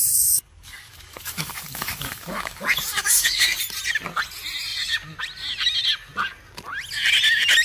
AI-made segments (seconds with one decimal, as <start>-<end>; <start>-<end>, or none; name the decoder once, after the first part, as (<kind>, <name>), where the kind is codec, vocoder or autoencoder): 0.0-3.6 (codec, DAC)